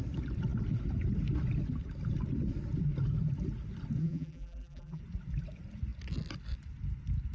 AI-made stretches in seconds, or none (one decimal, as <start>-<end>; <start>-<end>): 4.0-5.0